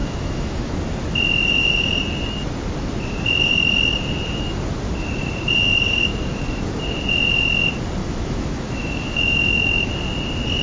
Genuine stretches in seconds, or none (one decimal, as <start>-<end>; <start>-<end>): 0.8-8.0; 9.9-10.6